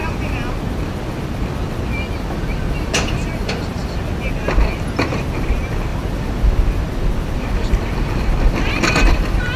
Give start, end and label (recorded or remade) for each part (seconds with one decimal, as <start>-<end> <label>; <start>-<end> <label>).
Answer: 0.0-0.5 remade; 0.5-9.6 recorded